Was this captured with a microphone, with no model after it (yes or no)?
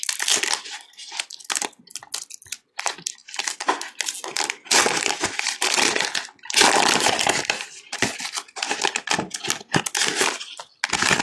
yes